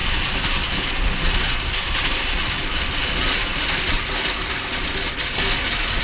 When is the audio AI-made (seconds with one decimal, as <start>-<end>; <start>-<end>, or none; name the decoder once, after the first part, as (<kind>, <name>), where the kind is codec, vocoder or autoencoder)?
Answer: none